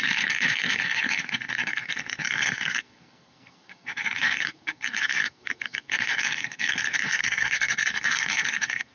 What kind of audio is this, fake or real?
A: fake